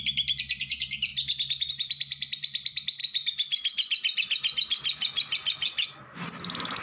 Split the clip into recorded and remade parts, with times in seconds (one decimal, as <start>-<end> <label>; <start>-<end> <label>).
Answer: 0.0-1.1 remade; 1.1-1.7 recorded; 1.7-3.0 remade; 3.0-6.8 recorded